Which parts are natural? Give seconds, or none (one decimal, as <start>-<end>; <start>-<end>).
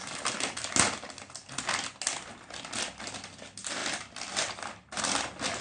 0.0-5.6